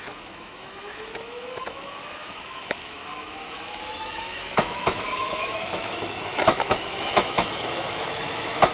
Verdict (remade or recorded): remade